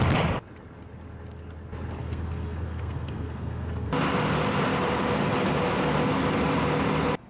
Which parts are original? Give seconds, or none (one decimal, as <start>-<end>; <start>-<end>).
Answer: 0.0-2.0; 3.9-7.3

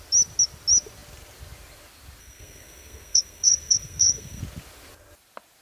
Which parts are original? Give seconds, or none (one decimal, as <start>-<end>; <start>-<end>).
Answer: 0.0-2.2; 4.4-5.6